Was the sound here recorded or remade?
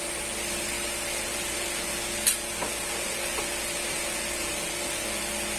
recorded